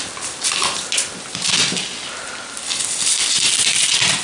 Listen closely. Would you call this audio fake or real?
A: real